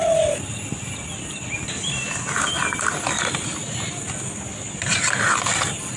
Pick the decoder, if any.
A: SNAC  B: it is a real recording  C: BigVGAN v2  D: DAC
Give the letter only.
B